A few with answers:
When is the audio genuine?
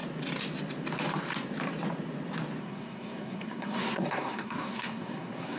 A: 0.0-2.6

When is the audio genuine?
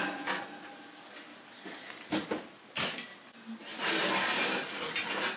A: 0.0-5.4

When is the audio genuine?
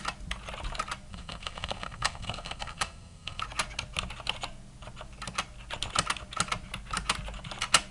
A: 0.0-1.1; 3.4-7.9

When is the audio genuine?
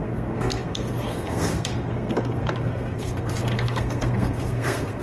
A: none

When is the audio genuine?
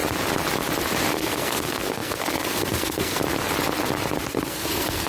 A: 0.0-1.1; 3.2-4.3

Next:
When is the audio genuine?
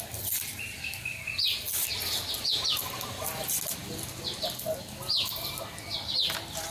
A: 0.0-6.7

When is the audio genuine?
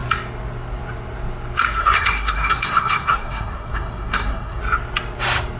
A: 0.0-1.8; 4.6-5.6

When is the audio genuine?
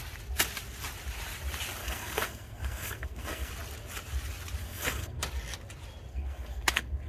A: 0.0-1.8; 3.5-4.6; 5.2-6.1